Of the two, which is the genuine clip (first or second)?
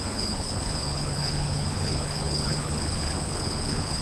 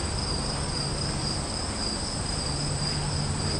second